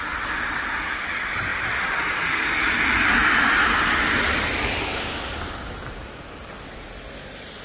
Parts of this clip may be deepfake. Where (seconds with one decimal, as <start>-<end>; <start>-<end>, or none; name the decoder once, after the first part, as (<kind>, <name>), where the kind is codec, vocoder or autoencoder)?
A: none